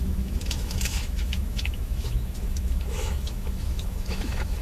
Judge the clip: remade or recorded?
remade